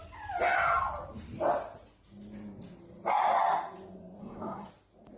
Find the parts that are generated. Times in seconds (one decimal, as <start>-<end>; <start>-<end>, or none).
4.2-4.7